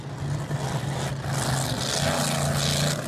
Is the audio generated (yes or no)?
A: no